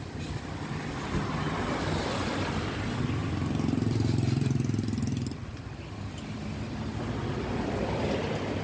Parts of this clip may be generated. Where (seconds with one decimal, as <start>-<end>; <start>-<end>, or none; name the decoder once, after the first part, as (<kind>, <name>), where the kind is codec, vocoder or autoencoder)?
3.2-7.3 (vocoder, BigVGAN v2)